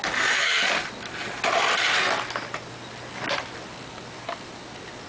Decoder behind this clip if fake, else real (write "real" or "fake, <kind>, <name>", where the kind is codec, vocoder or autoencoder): real